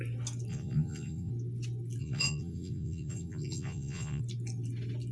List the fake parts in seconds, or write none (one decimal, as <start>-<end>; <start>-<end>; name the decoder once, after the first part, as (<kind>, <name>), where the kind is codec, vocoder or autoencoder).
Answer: 0.5-1.3 (vocoder, Vocos); 2.0-4.2